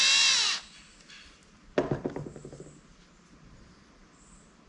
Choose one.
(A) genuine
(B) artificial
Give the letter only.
A